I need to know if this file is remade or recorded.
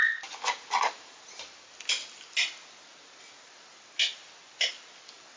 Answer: recorded